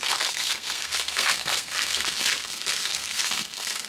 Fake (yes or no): yes